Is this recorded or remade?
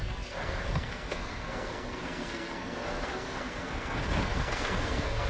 remade